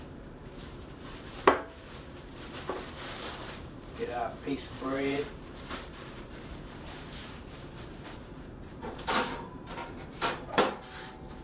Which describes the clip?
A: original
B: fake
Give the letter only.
B